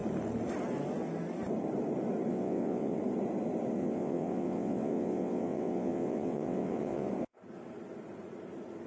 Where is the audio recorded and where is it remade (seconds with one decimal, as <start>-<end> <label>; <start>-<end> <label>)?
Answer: 0.0-2.3 recorded; 2.3-3.0 remade; 3.0-3.8 recorded; 3.8-7.1 remade; 7.1-8.9 recorded